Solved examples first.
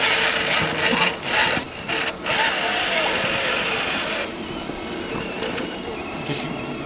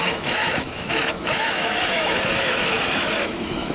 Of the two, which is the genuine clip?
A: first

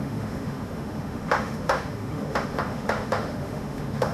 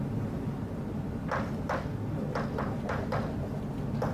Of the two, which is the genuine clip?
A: second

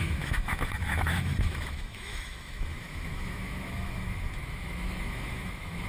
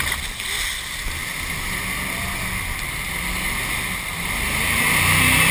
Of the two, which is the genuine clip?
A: second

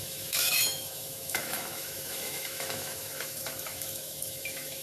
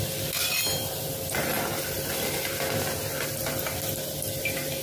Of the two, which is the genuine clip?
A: second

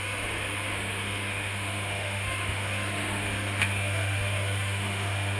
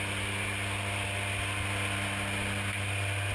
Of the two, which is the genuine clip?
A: second